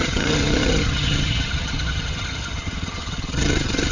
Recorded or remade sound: remade